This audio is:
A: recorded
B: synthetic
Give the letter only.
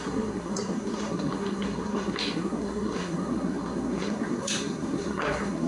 B